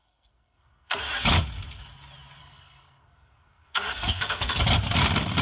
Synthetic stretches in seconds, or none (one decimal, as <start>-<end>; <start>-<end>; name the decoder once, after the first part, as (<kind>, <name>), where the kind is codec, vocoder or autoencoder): 0.0-1.0 (codec, SNAC); 2.4-4.6